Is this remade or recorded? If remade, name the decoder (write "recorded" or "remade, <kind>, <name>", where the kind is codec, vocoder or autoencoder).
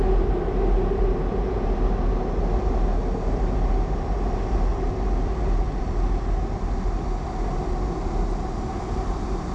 recorded